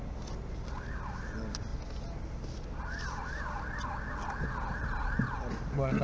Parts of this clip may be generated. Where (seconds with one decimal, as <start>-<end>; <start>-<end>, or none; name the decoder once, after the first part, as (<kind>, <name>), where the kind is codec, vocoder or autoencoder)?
none